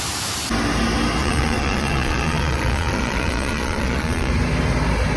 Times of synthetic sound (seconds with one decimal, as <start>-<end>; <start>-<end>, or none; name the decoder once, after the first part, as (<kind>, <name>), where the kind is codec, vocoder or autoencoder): 1.2-4.3 (vocoder, Vocos)